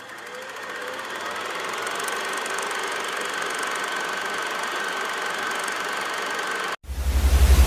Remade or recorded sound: recorded